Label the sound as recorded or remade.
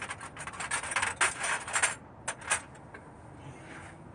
recorded